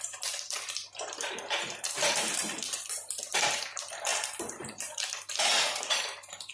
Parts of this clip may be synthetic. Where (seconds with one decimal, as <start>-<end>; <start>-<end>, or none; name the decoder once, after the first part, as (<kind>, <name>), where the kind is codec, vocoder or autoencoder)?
0.0-6.5 (vocoder, BigVGAN v2)